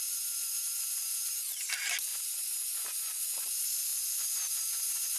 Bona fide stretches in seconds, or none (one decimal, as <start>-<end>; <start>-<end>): 0.0-5.2